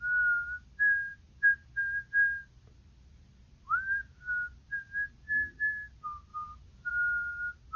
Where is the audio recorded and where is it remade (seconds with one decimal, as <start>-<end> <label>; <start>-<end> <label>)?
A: 0.0-7.8 recorded